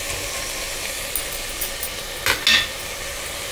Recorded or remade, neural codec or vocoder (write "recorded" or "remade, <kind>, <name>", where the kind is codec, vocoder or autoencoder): recorded